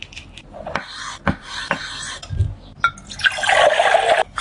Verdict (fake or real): real